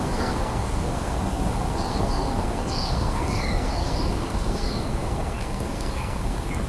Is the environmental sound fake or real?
fake